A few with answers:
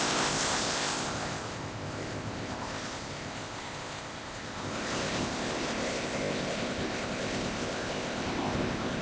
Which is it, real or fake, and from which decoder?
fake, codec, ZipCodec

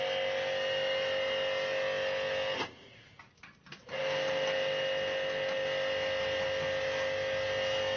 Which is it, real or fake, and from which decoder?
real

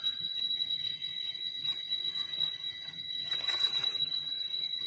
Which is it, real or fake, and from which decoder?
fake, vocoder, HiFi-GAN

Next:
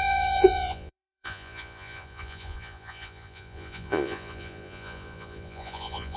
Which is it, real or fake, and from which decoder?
fake, vocoder, Vocos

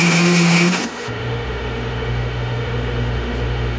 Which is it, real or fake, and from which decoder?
fake, autoencoder, DAC-VAE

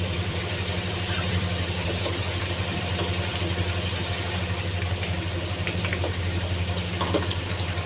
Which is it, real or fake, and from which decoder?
fake, vocoder, BigVGAN v2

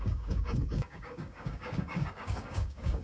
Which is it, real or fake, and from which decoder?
fake, codec, DAC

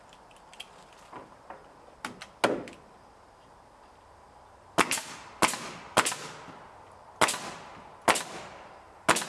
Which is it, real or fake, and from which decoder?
real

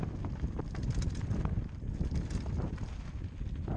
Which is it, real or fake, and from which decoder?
real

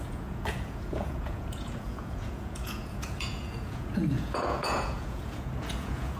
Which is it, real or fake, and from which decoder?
fake, vocoder, Vocos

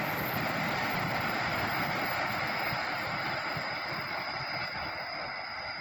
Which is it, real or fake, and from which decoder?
real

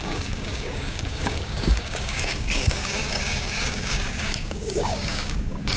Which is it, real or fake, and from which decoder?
fake, codec, DAC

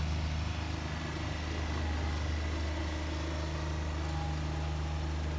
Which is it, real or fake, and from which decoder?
real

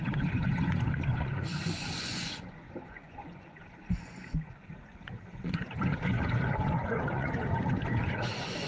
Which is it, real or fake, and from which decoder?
fake, vocoder, Vocos